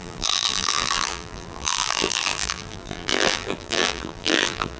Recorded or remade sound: remade